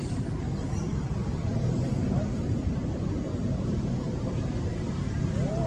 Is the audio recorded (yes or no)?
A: no